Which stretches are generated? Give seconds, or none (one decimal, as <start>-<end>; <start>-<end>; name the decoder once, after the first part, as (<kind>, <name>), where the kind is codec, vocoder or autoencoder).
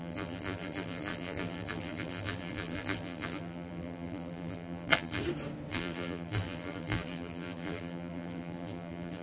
0.0-5.2 (vocoder, BigVGAN v2); 5.7-9.2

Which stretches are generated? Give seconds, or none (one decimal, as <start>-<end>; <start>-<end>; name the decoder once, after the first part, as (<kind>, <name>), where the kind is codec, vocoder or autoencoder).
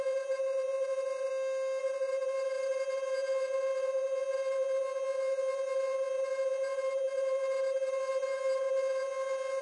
0.0-1.3 (vocoder, Vocos); 1.8-9.6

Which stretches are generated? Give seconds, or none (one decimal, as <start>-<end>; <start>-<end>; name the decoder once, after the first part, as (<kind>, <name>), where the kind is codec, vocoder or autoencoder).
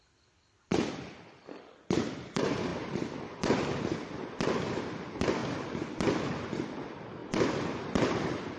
none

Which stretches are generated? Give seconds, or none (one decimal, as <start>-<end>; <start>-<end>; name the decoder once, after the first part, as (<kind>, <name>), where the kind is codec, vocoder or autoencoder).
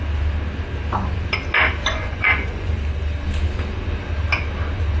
1.8-2.7 (vocoder, Vocos)